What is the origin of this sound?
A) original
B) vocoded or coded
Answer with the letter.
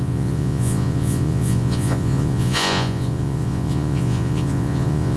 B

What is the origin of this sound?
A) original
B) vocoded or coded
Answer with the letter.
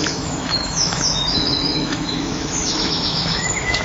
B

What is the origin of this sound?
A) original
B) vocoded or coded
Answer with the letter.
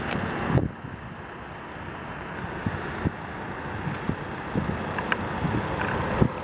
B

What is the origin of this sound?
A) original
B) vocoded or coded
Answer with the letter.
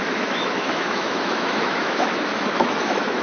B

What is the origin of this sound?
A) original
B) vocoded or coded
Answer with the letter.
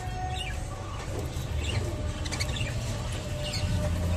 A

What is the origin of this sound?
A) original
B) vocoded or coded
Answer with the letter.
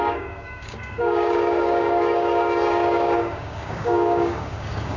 B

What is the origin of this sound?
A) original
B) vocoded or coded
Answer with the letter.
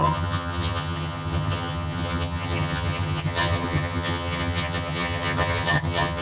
B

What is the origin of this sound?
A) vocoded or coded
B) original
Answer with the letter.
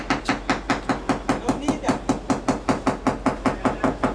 B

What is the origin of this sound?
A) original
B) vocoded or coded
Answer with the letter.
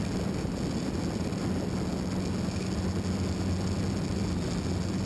A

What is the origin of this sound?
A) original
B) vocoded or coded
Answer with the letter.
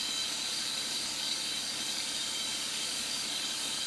B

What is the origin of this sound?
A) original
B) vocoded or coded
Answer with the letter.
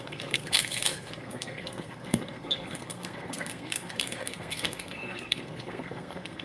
B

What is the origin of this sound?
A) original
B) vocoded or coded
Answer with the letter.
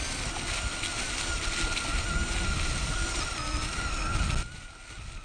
A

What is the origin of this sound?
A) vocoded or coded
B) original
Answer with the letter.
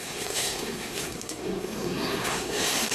A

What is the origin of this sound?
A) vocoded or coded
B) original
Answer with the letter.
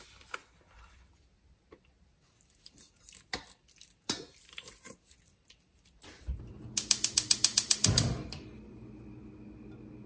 B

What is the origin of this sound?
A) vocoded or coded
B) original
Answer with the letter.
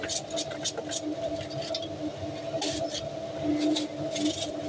B